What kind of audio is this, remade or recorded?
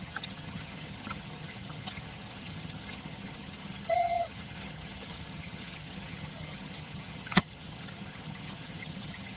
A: remade